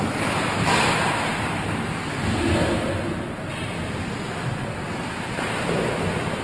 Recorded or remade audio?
recorded